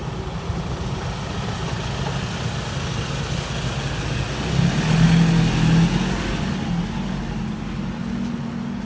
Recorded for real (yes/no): yes